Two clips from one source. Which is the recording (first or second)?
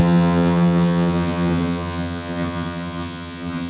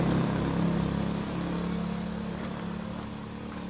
second